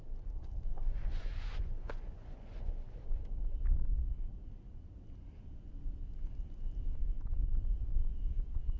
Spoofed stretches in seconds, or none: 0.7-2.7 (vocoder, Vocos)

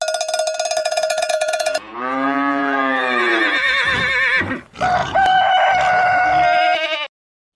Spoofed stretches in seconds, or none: 0.8-4.0 (vocoder, Vocos); 5.0-5.5